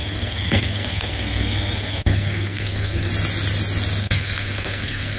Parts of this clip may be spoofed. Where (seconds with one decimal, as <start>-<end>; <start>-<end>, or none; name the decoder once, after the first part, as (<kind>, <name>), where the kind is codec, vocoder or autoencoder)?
0.0-3.1 (codec, SNAC); 4.0-5.2